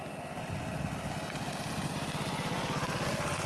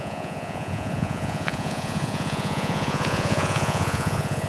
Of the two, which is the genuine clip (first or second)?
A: first